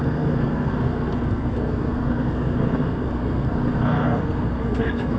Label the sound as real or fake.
fake